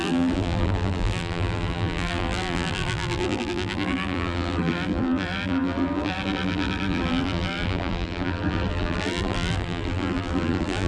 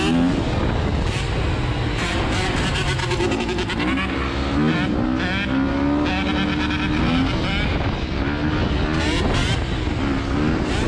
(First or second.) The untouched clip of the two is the second